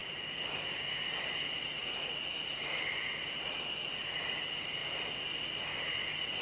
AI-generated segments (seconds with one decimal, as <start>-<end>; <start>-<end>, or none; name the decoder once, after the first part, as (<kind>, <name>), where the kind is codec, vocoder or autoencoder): none